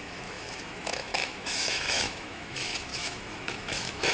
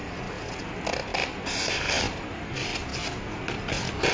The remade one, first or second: first